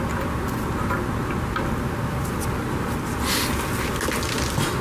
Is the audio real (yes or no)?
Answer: yes